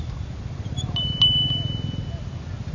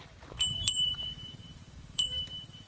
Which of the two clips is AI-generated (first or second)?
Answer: second